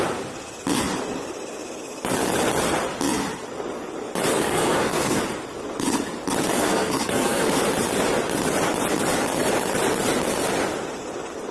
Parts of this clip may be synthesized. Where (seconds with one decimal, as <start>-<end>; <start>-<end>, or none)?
4.3-5.2; 6.5-7.6